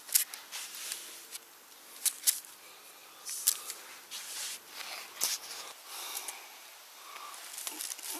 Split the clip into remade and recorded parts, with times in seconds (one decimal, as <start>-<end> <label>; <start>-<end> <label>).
0.0-8.2 recorded